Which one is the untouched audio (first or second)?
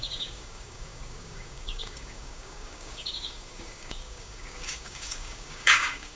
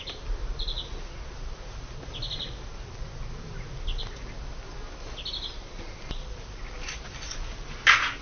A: second